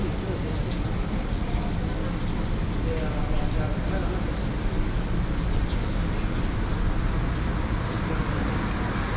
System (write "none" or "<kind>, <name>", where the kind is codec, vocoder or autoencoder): none